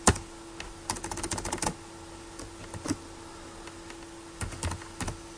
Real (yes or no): yes